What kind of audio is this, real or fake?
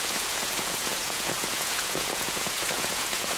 fake